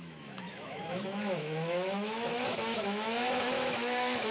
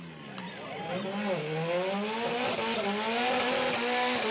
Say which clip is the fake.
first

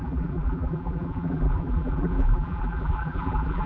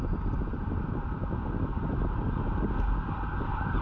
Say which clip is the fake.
first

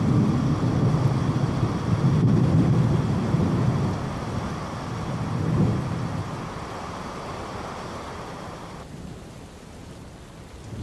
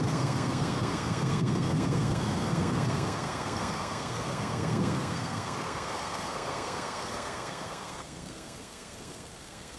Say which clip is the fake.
second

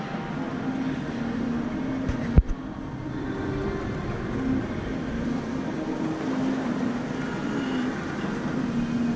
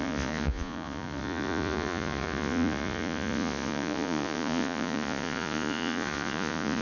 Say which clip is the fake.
second